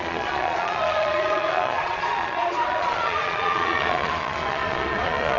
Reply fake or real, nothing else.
fake